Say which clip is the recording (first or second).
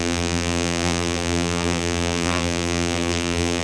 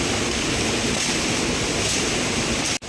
second